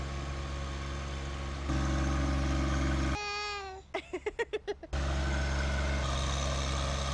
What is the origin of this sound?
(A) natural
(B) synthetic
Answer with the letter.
A